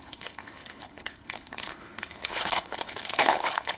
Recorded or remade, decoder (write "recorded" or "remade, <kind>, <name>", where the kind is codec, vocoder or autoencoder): remade, codec, HILCodec